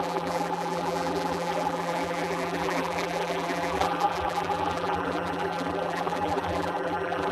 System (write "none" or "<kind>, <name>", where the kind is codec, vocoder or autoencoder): vocoder, BigVGAN v2